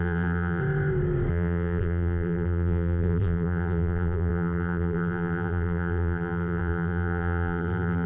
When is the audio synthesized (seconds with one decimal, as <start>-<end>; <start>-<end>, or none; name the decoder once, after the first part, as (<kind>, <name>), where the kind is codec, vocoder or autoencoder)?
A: 0.0-0.6 (vocoder, BigVGAN v2); 1.3-8.1